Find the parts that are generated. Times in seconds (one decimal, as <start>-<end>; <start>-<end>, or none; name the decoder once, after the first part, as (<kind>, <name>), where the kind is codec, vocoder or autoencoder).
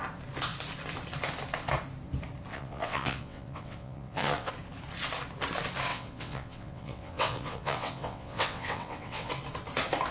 2.5-4.5 (vocoder, WaveNeXt); 5.9-9.3